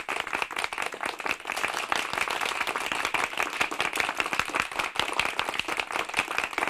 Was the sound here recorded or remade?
recorded